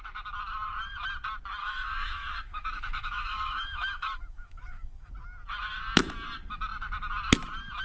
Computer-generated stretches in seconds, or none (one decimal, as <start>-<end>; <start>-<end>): 1.6-5.1

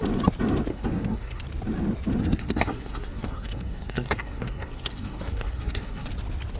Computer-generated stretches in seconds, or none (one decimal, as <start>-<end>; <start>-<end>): 0.7-1.4; 2.2-6.1

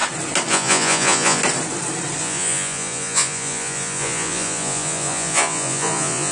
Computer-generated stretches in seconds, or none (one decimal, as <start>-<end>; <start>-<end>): 0.5-1.4; 2.2-6.3

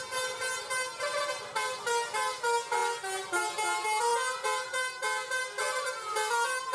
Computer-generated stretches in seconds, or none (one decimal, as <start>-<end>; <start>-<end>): none

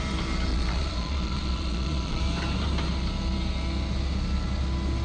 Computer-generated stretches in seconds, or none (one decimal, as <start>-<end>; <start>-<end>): 0.5-2.2